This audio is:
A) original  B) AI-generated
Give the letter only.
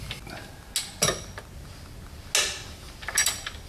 A